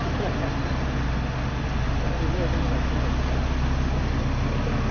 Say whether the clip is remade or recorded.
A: recorded